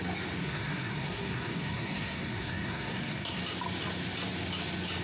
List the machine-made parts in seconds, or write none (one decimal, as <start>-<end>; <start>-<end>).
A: 0.4-3.4